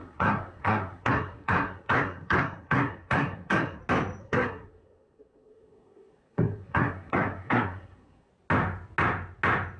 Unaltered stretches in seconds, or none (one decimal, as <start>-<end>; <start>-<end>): 3.8-4.2; 8.3-9.8